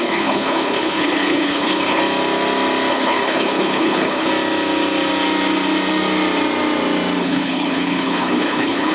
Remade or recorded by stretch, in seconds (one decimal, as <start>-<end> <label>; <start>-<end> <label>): 0.0-2.0 remade; 2.0-2.9 recorded; 2.9-4.3 remade; 4.3-7.2 recorded; 7.2-8.9 remade